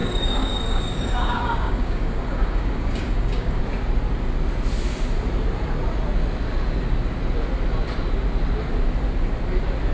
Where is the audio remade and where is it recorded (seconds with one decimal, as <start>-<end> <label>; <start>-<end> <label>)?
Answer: 0.0-3.6 remade; 3.6-9.9 recorded